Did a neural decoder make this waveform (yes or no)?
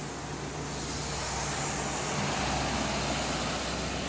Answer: no